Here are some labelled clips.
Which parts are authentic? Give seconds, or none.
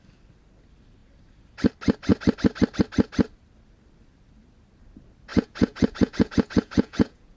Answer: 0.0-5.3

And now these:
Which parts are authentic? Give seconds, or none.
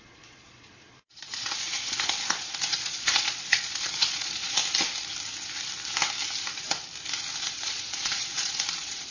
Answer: 4.6-7.4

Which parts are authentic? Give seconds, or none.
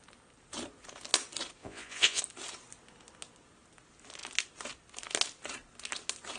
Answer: 0.0-1.6; 2.2-6.4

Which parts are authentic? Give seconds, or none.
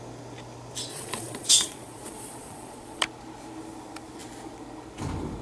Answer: 0.0-0.9; 3.0-5.4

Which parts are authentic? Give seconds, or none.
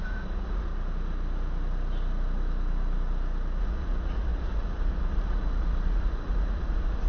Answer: 0.7-3.6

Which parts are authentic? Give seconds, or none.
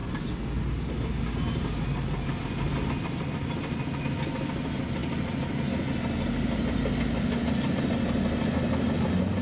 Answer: 0.0-9.4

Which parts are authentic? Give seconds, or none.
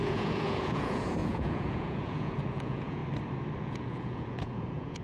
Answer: 3.0-3.6